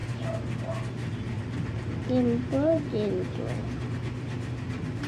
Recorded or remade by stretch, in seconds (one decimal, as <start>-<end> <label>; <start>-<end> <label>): 0.0-5.1 recorded